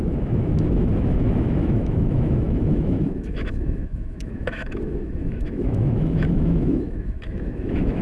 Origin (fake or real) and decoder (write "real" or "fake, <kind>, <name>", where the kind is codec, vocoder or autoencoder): fake, autoencoder, DAC-VAE